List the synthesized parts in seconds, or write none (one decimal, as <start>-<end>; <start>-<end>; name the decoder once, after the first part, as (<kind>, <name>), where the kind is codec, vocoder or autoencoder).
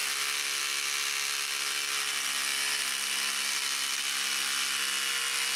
none